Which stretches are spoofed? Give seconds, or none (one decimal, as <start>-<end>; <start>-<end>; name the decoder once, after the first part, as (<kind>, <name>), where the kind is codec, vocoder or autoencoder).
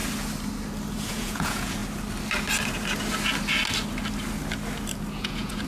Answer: 1.1-1.8 (vocoder, Vocos); 5.2-5.7